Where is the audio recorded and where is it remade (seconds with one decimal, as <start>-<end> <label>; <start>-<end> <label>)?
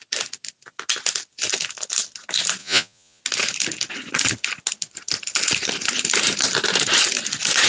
0.0-2.6 recorded; 2.6-3.2 remade; 3.2-7.7 recorded